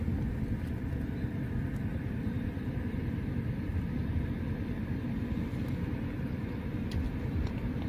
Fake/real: real